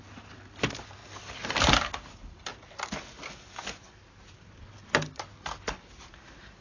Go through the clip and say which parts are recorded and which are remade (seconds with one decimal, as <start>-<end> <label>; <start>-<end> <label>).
0.0-6.6 recorded